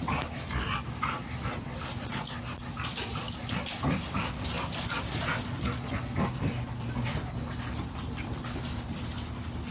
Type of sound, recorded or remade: recorded